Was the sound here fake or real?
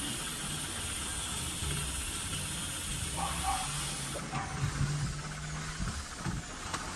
real